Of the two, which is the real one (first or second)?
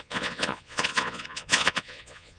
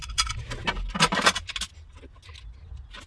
second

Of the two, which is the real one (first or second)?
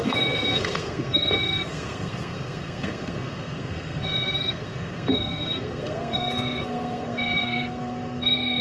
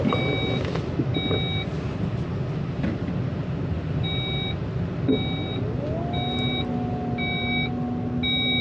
second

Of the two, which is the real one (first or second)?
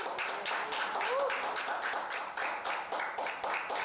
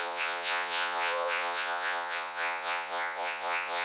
first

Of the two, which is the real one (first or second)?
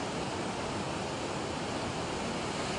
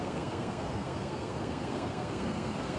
first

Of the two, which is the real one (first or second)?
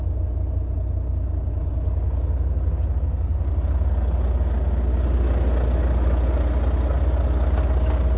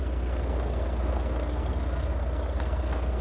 first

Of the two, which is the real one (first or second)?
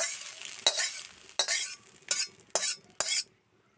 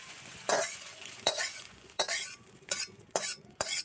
first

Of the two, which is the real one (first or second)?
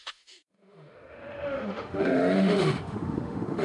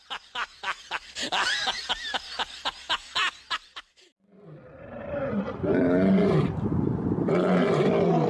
second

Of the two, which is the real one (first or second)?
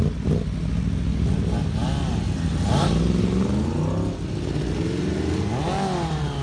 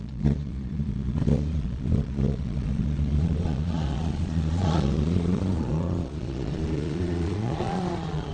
first